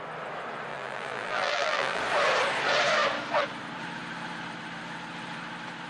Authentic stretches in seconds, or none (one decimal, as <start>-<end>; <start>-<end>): 0.0-0.7; 2.0-5.9